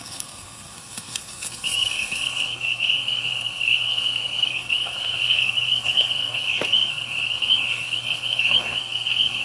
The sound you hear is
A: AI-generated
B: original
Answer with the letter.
A